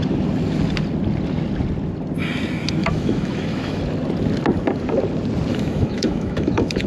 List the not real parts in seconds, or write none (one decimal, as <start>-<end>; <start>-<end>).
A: 2.8-3.8; 5.5-6.9

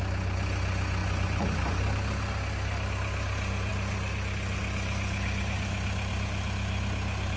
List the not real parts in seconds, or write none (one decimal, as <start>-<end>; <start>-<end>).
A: 1.0-1.8

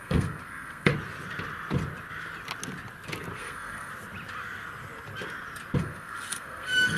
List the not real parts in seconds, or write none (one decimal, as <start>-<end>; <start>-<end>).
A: 0.0-0.9; 3.4-3.9; 5.8-7.0

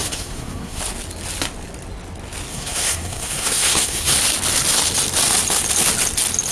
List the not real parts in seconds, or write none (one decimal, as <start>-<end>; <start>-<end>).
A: 0.0-0.8; 2.5-4.2

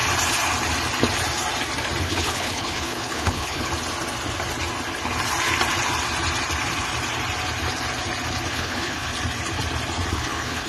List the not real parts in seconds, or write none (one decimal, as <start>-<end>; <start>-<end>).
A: 2.0-3.7; 8.5-9.1; 10.1-10.7

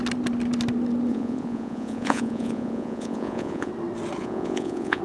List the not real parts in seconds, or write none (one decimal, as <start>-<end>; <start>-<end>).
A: 1.1-3.7; 4.2-5.0

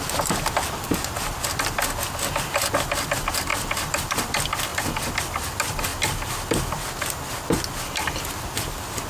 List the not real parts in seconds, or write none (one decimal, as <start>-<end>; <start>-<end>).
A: 3.5-4.1; 4.7-5.2

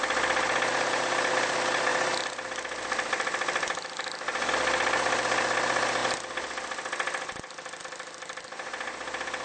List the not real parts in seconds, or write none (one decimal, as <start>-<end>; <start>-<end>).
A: none